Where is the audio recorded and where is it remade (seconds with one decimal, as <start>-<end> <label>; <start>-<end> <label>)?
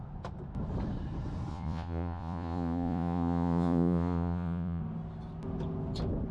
0.0-1.5 recorded; 1.5-4.8 remade; 4.8-6.3 recorded